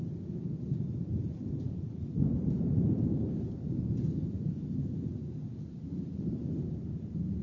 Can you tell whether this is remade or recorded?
remade